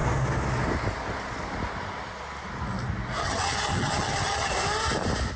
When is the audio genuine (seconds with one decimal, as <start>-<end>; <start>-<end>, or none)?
0.0-3.2; 4.5-5.4